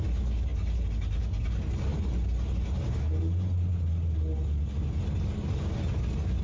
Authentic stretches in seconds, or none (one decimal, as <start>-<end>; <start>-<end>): 0.0-6.4